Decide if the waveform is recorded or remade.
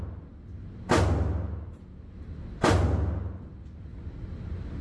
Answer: recorded